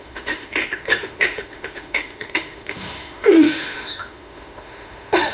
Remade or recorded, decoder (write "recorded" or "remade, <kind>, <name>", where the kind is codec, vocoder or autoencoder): remade, autoencoder, DAC-VAE